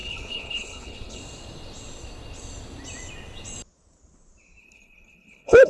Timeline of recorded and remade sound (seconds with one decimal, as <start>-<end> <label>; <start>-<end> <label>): 0.0-1.2 remade; 1.2-4.6 recorded; 4.6-5.7 remade